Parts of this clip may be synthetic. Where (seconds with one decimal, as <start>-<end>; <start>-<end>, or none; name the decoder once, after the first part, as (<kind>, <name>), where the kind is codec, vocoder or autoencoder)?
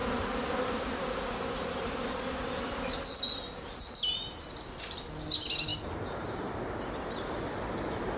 none